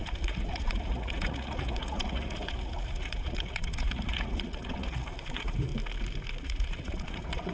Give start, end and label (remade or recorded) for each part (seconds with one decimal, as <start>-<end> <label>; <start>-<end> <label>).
0.0-5.7 remade; 5.7-6.4 recorded; 6.4-7.5 remade